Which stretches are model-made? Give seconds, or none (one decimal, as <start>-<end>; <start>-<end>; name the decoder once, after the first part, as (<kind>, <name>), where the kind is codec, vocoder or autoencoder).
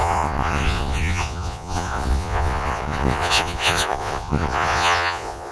0.0-5.5 (vocoder, Vocos)